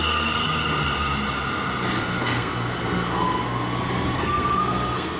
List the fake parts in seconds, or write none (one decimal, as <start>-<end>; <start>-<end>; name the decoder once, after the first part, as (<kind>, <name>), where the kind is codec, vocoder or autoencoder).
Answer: 0.0-0.4 (codec, SNAC); 2.0-5.2